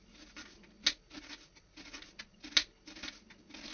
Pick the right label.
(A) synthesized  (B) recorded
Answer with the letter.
B